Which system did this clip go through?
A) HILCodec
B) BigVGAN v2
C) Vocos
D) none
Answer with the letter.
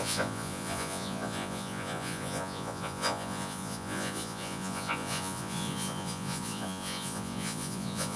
C